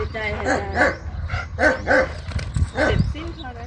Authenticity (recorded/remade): recorded